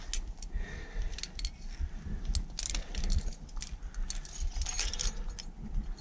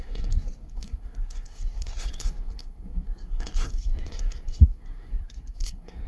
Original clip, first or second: first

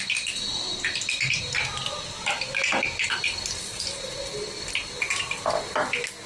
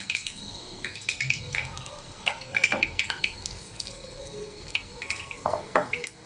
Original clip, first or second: first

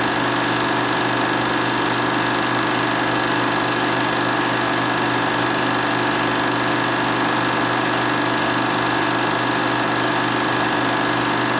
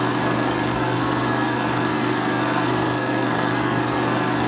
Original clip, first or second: first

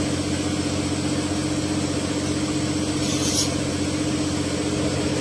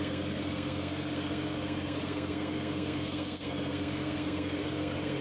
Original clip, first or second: first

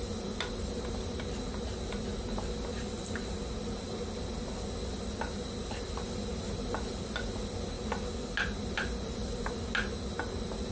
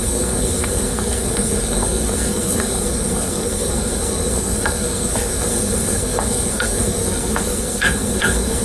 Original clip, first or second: first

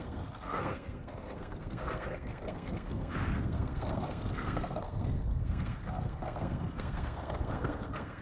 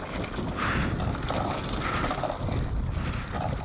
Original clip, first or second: second